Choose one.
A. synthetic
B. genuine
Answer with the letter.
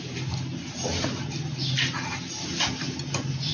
B